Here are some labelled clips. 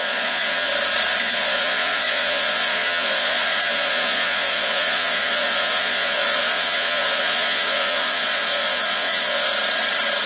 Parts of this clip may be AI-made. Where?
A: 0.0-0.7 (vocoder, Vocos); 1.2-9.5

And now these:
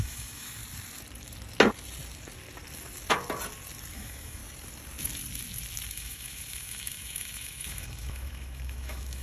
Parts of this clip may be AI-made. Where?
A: 0.0-0.6 (autoencoder, DAC-VAE); 3.9-4.4; 5.9-9.2

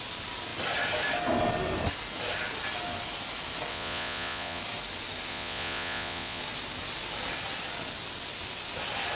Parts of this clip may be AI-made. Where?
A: 3.7-4.6 (vocoder, Vocos); 5.3-6.4

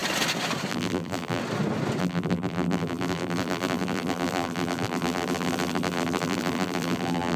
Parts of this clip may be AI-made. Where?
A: 0.7-1.4 (vocoder, BigVGAN v2); 2.0-7.4